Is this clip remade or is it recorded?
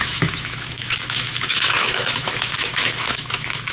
remade